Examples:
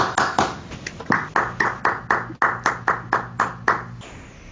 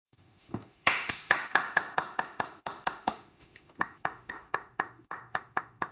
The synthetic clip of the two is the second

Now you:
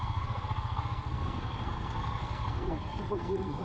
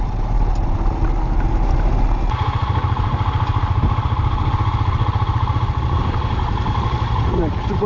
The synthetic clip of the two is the first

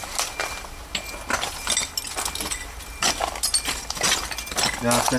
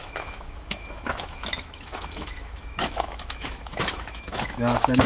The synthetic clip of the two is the second